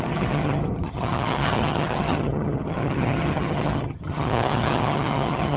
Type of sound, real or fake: fake